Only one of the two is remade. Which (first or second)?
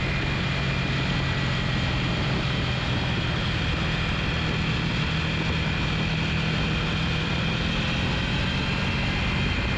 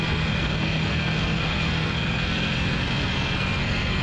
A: second